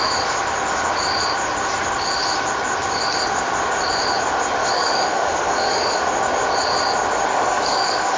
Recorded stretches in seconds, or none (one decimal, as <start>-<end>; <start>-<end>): 0.0-4.6; 6.1-7.3